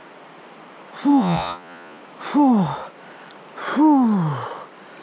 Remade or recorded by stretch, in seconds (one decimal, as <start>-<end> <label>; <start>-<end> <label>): 0.0-1.1 recorded; 1.1-2.0 remade; 2.0-5.0 recorded